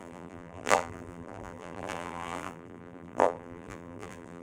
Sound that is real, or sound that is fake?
fake